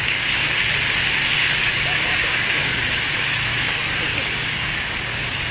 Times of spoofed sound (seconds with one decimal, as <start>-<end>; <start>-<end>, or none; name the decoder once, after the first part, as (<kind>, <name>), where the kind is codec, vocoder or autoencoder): 0.0-0.6 (codec, DAC); 1.4-5.5